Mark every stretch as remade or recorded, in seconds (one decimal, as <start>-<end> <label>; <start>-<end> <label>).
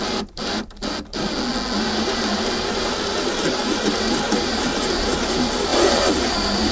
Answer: 0.0-5.7 recorded; 5.7-6.7 remade